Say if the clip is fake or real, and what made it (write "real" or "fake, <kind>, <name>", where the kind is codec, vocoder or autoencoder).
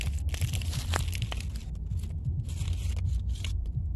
real